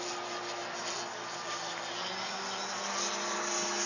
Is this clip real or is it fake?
real